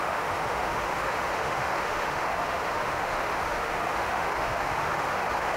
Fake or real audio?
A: fake